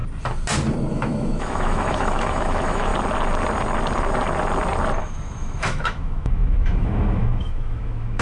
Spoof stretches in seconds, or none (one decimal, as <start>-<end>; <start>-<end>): 0.9-2.9; 5.0-8.2